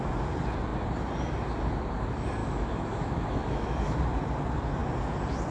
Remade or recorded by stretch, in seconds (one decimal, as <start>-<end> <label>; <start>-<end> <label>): 0.0-2.4 recorded; 2.4-4.0 remade; 4.0-5.5 recorded